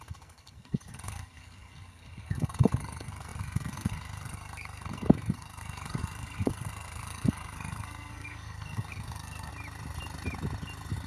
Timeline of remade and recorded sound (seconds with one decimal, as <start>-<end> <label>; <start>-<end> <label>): 0.0-9.5 remade; 9.5-11.1 recorded